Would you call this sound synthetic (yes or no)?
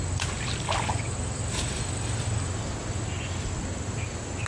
no